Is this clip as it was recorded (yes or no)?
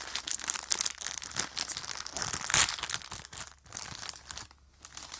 yes